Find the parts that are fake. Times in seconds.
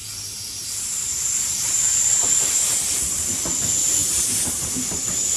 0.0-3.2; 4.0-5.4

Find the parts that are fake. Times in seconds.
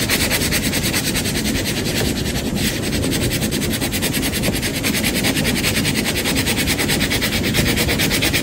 4.7-5.6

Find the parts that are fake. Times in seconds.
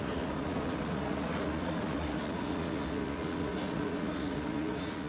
0.0-5.1